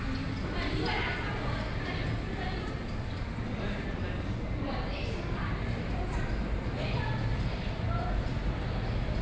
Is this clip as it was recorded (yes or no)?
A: yes